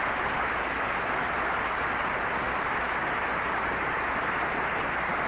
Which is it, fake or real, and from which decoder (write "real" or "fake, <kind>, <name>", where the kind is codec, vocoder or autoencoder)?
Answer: real